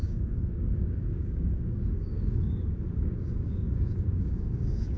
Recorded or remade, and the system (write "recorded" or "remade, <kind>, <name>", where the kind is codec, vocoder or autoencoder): remade, codec, DAC